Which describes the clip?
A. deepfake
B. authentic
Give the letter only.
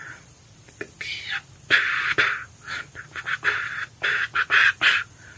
B